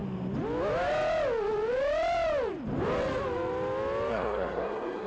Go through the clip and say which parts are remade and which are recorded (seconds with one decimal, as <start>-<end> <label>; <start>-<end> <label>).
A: 0.0-4.1 recorded; 4.1-5.1 remade